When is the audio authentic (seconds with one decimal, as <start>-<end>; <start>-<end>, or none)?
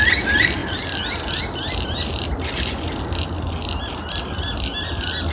0.0-5.3